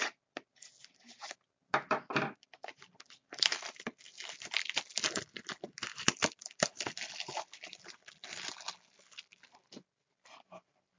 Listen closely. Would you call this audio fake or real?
real